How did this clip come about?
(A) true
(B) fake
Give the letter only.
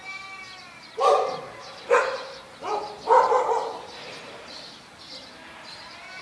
A